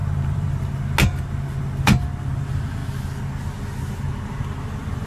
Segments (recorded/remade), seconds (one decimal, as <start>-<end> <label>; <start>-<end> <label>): 0.0-0.6 remade; 0.6-5.1 recorded